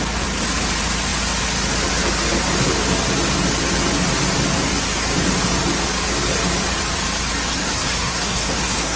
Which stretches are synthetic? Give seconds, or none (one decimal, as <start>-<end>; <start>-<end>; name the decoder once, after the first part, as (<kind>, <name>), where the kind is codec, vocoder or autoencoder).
7.5-9.0 (codec, SNAC)